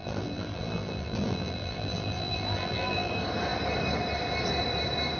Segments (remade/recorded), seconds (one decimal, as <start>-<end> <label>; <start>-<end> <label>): 0.0-3.1 remade; 3.1-5.2 recorded